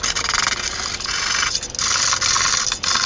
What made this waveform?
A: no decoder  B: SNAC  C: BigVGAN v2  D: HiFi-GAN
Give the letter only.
A